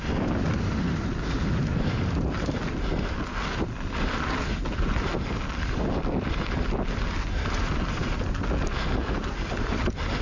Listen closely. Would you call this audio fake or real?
real